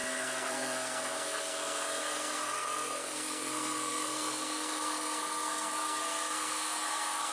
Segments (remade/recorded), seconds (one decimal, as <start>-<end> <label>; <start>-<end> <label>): 0.0-7.3 remade